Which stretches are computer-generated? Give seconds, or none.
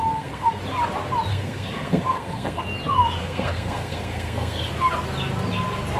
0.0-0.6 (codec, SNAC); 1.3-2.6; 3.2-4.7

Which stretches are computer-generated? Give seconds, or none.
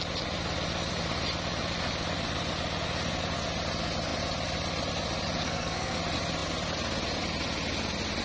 5.4-6.0 (codec, SNAC)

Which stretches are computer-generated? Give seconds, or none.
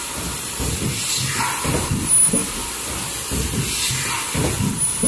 none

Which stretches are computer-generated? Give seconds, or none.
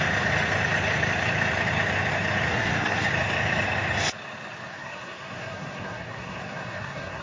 2.5-3.1 (codec, SNAC); 4.7-7.2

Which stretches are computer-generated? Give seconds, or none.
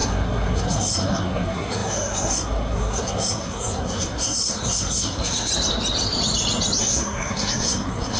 0.0-5.5 (codec, SNAC); 6.8-8.2